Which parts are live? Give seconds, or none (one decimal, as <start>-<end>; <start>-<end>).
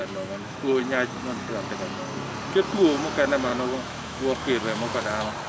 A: 0.8-3.5; 5.0-5.5